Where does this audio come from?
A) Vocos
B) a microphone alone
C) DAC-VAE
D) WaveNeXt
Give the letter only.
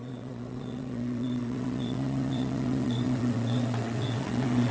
D